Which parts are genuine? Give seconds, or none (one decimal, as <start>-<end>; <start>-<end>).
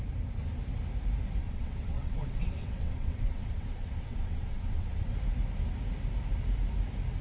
0.0-1.4; 5.1-7.2